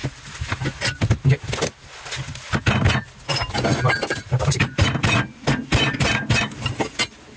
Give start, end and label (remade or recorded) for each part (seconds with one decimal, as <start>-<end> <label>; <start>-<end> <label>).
0.0-3.7 recorded; 3.7-6.0 remade; 6.0-7.4 recorded

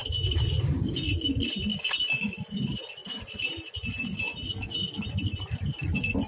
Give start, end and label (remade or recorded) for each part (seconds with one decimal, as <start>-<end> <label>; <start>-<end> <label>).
0.0-1.7 recorded; 1.7-2.3 remade; 2.3-6.3 recorded